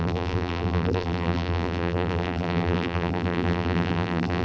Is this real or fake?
fake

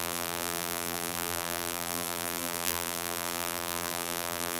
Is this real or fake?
fake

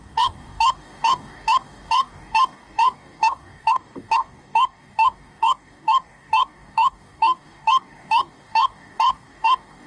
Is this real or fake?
fake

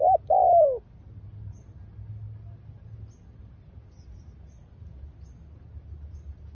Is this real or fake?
real